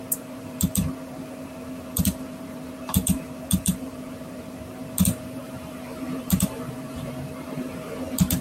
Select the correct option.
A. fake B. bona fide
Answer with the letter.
A